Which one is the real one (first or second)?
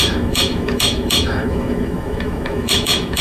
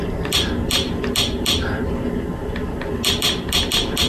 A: second